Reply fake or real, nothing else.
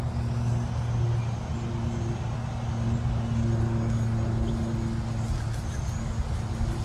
real